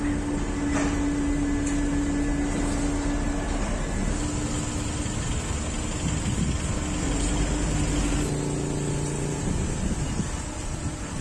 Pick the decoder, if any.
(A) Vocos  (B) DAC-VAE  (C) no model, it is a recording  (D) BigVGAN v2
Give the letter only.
C